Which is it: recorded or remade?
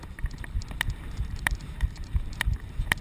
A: remade